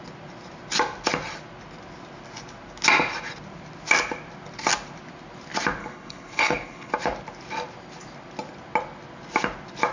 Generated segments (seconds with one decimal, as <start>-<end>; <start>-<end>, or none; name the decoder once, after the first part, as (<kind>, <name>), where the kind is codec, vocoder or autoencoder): 5.8-6.9 (codec, HILCodec)